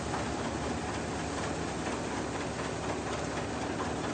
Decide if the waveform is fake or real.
real